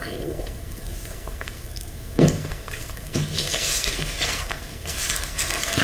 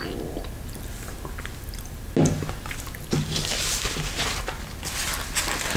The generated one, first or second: first